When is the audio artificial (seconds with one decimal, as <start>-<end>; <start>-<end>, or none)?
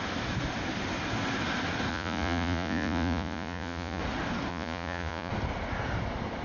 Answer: 1.9-4.0; 4.5-5.3